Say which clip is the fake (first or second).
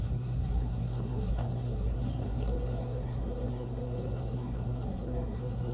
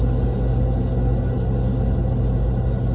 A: first